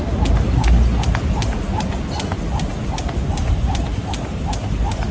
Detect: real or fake real